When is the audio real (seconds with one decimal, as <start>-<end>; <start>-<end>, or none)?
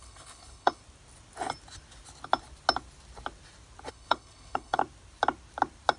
0.8-3.9; 4.8-6.0